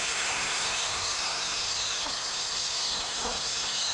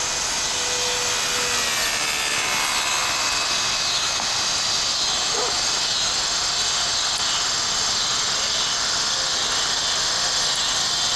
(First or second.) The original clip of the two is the second